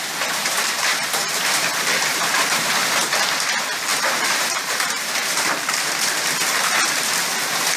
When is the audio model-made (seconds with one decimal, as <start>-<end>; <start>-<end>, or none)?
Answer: 0.4-1.4; 2.1-2.7; 3.9-6.3